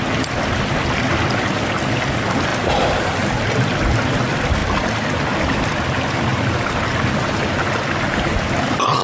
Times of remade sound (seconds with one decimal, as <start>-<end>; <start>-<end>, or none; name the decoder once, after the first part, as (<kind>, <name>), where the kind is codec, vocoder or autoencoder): none